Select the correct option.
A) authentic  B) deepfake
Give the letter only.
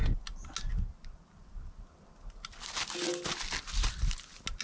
A